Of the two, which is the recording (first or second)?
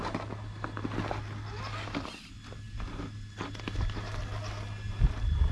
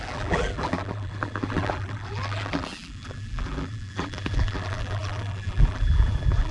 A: first